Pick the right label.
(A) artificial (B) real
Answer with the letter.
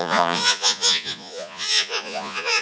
A